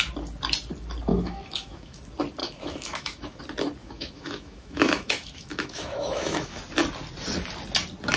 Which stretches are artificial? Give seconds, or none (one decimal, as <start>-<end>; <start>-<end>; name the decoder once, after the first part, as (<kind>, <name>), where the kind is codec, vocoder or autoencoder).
1.1-2.0 (autoencoder, DAC-VAE); 2.4-3.4; 3.8-6.6